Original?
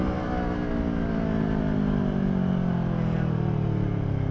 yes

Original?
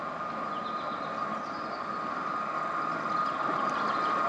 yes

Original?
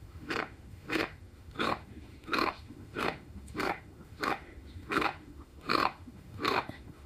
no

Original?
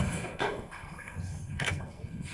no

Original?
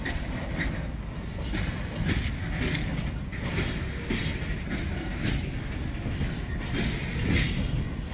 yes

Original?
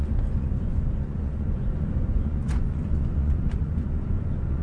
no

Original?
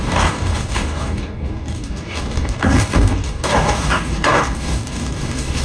no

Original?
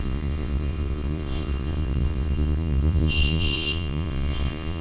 no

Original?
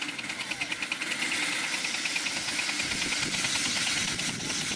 yes